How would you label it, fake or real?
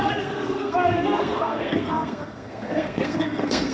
fake